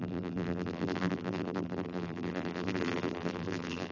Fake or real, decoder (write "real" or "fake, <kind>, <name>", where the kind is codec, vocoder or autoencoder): fake, vocoder, BigVGAN v2